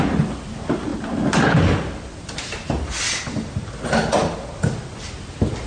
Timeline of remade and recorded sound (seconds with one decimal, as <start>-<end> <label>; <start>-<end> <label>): 0.0-5.7 recorded